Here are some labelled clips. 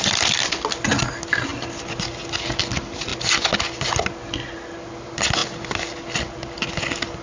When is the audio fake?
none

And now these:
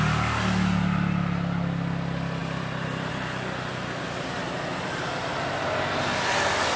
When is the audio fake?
2.4-3.1 (vocoder, BigVGAN v2)

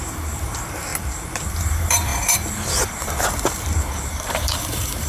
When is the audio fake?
0.0-0.9 (vocoder, BigVGAN v2); 1.5-5.1

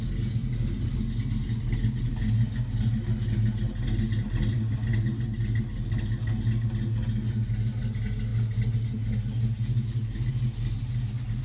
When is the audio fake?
none

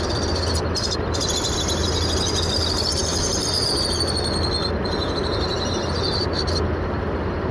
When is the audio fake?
none

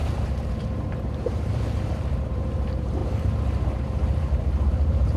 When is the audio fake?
0.0-5.2 (vocoder, BigVGAN v2)